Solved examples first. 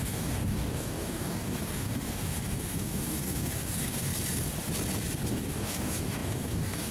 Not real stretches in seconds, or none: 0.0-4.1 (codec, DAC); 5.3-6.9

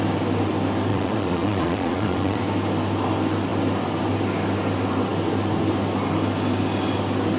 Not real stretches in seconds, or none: 0.9-2.4 (vocoder, Vocos)

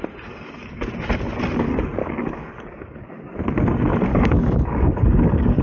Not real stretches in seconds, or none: 2.0-3.4 (codec, DAC); 4.1-5.6

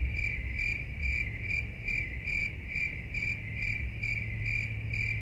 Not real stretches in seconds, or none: none